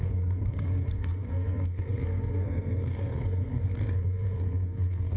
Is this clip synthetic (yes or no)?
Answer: yes